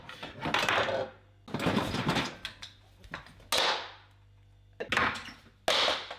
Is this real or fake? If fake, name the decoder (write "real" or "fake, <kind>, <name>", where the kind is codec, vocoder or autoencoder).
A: real